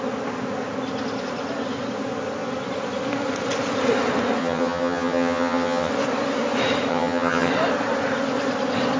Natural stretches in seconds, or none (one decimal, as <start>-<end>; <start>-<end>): 0.0-4.4; 5.9-6.9; 7.5-9.0